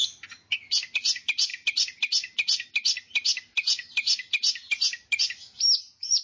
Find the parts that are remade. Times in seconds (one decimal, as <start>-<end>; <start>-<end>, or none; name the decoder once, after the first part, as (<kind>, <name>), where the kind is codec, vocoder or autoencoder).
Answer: none